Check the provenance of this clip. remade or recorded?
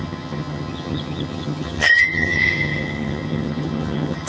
remade